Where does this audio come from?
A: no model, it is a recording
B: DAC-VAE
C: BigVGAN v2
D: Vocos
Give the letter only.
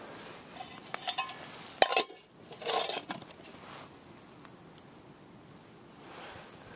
A